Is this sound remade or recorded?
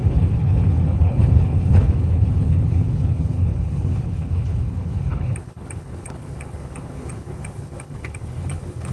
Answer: remade